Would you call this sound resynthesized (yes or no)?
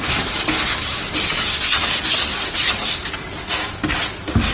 no